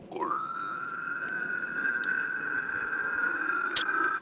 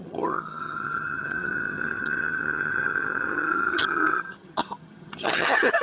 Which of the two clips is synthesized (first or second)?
second